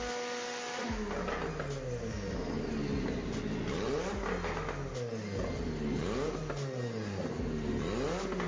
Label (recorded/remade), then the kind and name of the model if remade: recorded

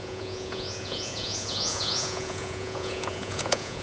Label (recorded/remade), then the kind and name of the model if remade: remade, vocoder, Vocos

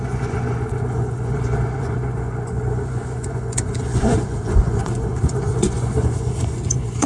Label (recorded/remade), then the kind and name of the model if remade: remade, vocoder, Vocos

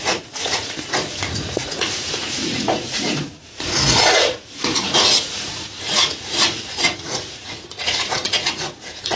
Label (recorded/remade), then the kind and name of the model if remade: remade, vocoder, Vocos